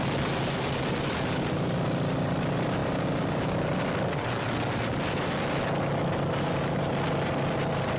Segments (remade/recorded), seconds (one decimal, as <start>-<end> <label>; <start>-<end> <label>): 0.0-8.0 recorded